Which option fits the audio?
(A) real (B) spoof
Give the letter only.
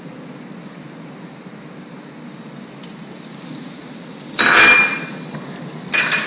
A